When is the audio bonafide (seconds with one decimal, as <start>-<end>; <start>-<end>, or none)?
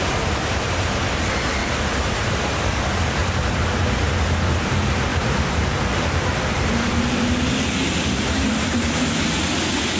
0.0-1.6; 2.8-3.2; 4.1-5.1; 7.3-10.0